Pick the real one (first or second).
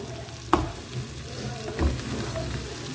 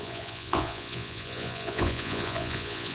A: first